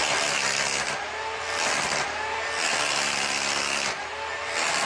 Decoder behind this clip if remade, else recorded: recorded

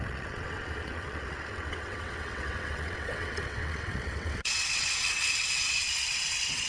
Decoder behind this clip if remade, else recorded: remade, vocoder, WaveNeXt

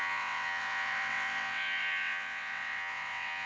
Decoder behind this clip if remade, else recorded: remade, vocoder, WaveNeXt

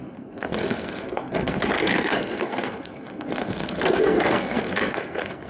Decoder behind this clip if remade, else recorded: remade, codec, SNAC